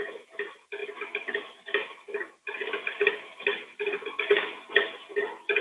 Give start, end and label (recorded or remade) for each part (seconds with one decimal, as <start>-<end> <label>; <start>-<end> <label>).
0.0-0.8 recorded; 0.8-4.2 remade; 4.2-5.6 recorded